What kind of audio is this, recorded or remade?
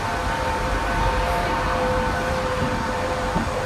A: remade